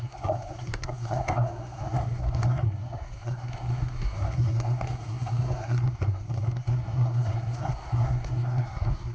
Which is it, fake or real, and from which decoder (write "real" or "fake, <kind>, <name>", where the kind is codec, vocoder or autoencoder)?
fake, codec, SNAC